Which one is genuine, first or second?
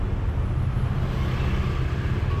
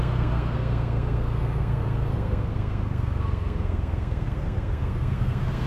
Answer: first